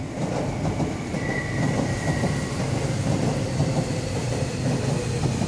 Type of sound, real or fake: real